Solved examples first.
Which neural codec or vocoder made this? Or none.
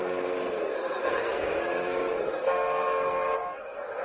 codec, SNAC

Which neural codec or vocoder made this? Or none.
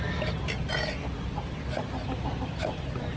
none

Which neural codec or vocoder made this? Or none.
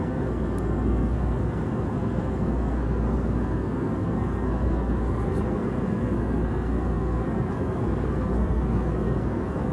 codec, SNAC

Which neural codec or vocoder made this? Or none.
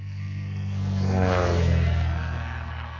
codec, SNAC